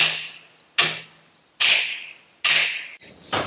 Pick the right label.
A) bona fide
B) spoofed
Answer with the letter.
A